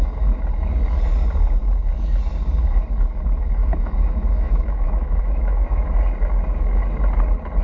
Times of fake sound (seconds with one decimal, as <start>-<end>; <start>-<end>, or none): 3.6-5.9